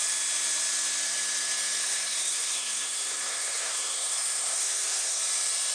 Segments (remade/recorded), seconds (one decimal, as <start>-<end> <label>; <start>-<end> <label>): 0.0-1.8 recorded; 1.8-5.2 remade; 5.2-5.7 recorded